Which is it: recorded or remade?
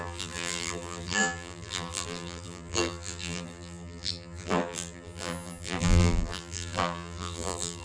remade